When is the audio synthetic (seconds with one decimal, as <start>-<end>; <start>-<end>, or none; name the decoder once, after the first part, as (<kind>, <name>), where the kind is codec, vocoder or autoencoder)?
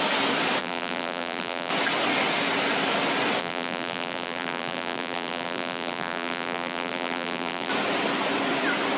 0.6-1.7 (vocoder, BigVGAN v2); 3.4-7.7